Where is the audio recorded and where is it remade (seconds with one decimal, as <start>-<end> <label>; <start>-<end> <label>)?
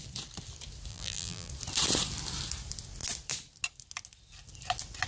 0.0-0.9 recorded; 0.9-1.5 remade; 1.5-5.1 recorded